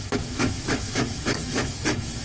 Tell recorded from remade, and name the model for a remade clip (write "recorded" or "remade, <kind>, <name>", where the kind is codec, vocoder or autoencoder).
remade, autoencoder, DAC-VAE